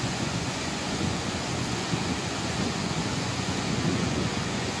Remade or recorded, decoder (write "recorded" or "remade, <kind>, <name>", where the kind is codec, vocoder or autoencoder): remade, vocoder, Vocos